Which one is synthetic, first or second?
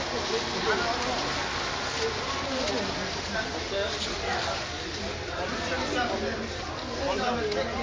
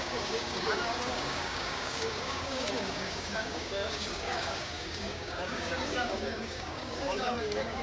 second